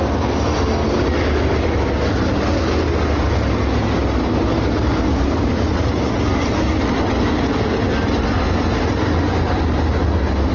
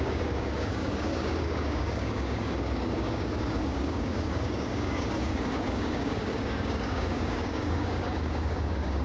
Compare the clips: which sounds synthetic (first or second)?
second